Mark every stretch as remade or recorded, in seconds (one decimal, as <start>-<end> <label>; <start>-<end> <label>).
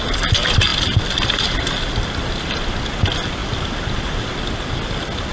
0.0-5.3 recorded